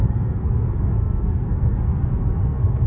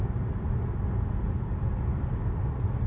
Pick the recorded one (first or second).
second